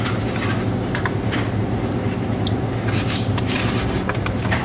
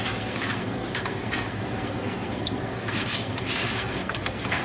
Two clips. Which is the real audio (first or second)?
first